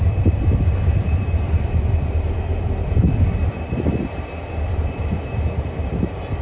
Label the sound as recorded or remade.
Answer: remade